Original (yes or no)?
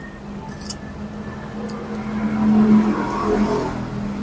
yes